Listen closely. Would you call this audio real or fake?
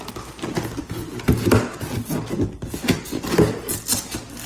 real